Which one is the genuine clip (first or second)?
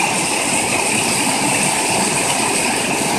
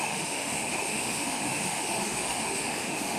first